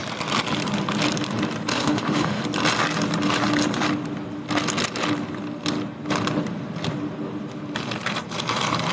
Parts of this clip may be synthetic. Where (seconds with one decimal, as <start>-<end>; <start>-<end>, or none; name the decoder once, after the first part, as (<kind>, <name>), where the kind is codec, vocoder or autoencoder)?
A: 1.7-2.4 (autoencoder, DAC-VAE)